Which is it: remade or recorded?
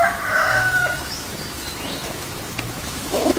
remade